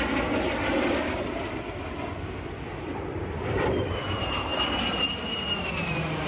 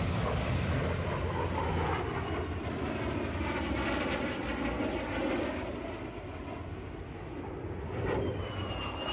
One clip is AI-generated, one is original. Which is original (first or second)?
second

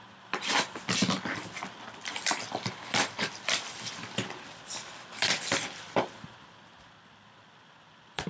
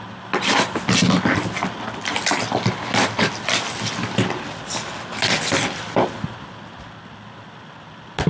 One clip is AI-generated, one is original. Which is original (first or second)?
second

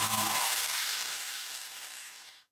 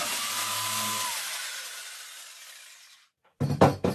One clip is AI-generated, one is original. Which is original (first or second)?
second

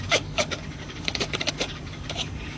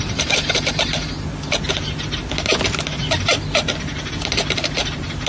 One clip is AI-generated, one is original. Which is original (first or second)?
second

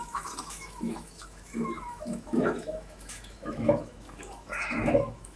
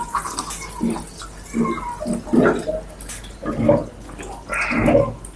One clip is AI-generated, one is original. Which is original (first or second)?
second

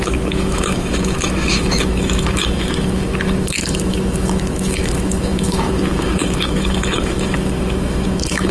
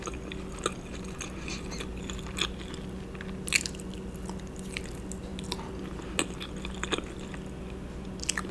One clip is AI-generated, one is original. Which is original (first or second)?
second